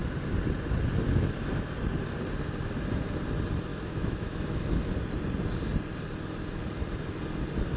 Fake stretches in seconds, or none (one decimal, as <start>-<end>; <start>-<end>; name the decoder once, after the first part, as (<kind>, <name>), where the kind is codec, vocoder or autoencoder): 3.7-4.6 (autoencoder, DAC-VAE)